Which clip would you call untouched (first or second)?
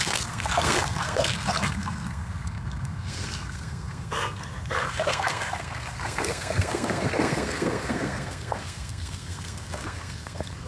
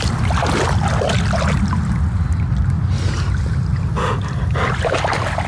second